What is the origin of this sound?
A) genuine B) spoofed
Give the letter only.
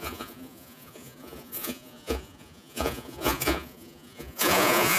B